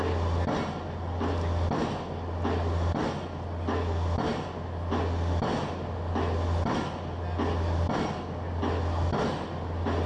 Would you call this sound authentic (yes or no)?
yes